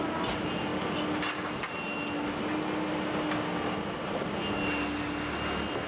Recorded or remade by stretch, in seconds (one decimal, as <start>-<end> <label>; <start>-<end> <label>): 0.0-5.9 recorded